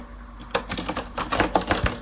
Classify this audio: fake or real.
real